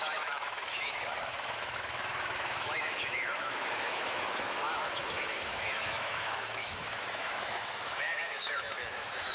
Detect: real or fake fake